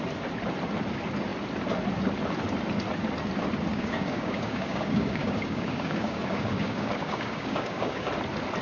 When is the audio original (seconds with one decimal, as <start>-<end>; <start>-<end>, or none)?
0.0-3.7; 8.1-8.6